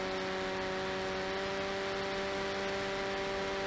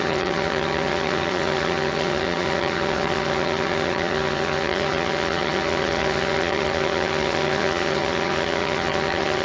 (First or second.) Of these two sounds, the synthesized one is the second